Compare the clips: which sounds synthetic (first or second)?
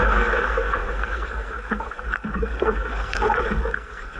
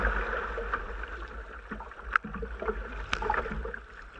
first